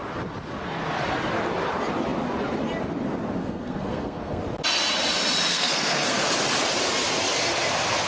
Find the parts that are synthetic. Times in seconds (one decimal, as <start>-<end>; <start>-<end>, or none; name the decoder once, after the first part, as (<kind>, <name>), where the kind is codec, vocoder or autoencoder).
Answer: 3.4-4.4 (codec, SNAC); 5.5-6.2